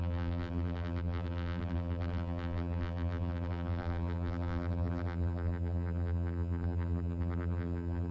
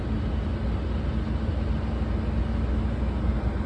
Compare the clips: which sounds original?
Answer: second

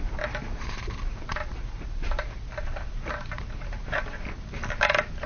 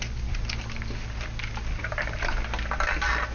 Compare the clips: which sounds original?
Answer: second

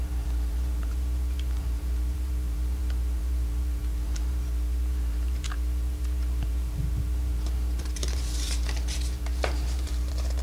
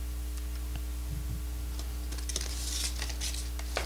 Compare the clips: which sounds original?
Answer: second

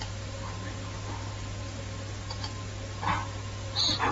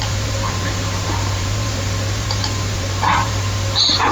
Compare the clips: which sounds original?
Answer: first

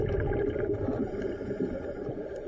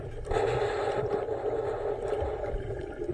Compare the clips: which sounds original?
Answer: second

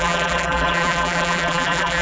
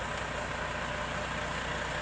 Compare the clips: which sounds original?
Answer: second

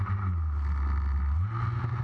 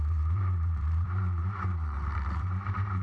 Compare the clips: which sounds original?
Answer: first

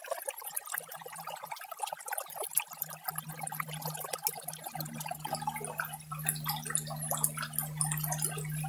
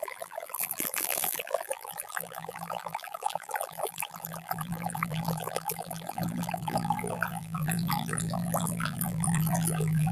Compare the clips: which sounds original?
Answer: first